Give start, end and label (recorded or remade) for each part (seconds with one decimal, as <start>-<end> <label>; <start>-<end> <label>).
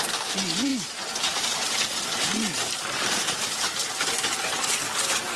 0.0-0.7 recorded; 0.7-3.9 remade; 3.9-5.4 recorded